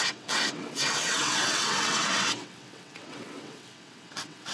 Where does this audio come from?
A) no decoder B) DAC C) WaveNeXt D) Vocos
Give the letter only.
C